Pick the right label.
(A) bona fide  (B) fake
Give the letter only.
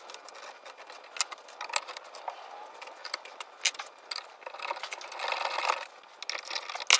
A